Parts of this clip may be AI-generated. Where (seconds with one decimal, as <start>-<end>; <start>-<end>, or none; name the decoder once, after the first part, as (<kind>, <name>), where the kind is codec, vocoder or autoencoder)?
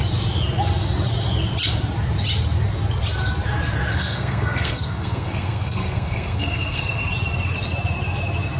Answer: 3.9-7.0 (codec, SNAC)